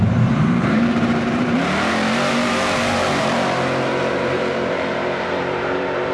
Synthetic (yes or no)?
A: yes